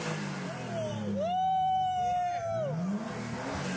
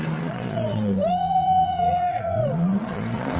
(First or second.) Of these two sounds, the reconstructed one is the second